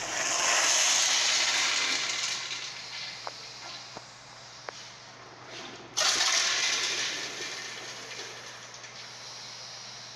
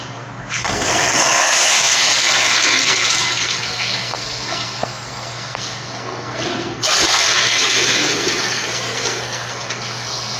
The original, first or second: first